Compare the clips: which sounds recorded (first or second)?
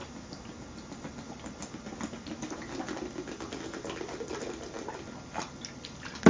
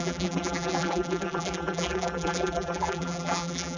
first